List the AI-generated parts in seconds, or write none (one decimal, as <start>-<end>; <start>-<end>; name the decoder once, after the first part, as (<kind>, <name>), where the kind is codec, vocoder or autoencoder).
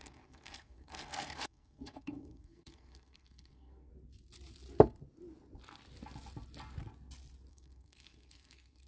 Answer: 0.0-3.9 (codec, SNAC); 7.5-8.9